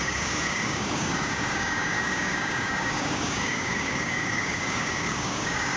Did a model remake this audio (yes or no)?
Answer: yes